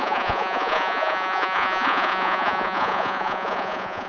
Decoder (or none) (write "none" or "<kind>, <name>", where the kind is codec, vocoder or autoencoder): vocoder, Vocos